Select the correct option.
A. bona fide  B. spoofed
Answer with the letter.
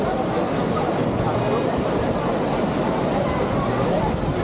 A